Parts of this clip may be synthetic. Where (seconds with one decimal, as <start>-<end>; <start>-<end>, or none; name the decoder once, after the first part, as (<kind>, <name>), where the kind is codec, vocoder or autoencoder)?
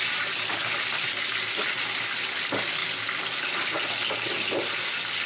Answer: none